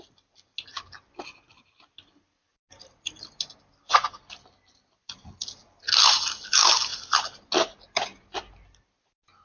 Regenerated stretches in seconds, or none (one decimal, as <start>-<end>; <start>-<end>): none